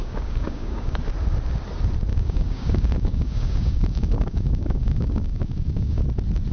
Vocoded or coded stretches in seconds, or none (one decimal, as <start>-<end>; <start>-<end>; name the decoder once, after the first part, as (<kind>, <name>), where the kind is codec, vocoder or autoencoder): 0.0-1.0 (codec, DAC); 2.1-6.0